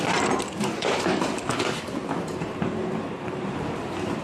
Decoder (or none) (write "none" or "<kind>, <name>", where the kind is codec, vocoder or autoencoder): none